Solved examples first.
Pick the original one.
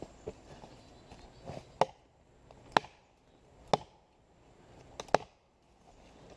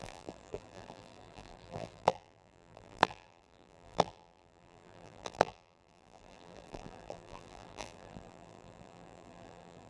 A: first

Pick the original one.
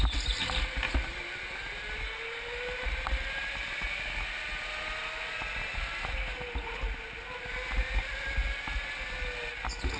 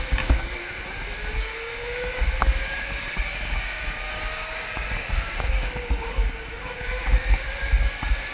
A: first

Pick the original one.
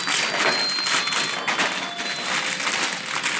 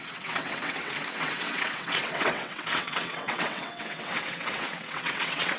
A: first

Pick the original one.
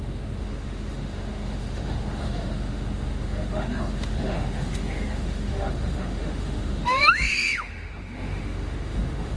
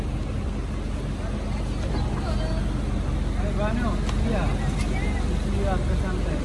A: second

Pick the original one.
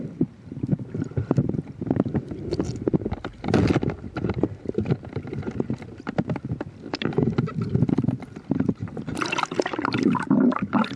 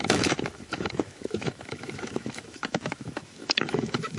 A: first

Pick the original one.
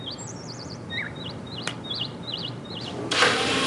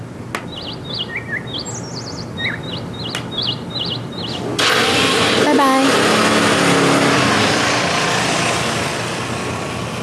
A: second